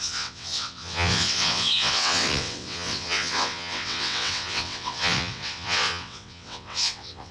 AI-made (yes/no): yes